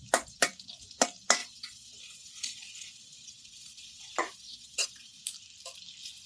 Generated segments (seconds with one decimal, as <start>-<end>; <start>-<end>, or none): 1.4-5.2